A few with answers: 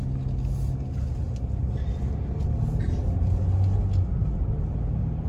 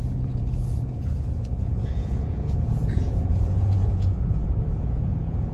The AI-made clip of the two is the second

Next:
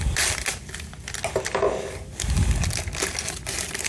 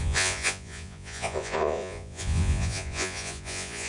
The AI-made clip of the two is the second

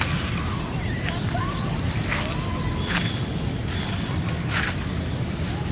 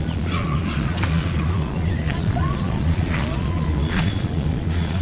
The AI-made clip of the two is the second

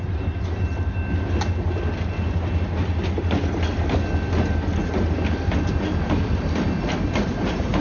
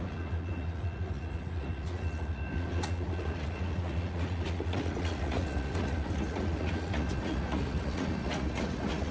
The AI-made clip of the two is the second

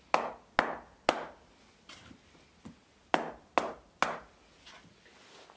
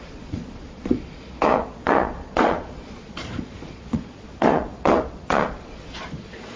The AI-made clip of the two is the second